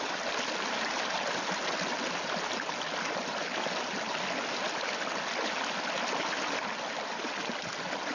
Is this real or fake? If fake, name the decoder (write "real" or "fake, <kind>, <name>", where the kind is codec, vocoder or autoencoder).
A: real